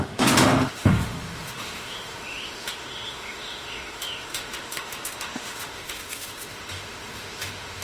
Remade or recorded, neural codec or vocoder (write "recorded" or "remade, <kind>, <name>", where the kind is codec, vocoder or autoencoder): remade, autoencoder, DAC-VAE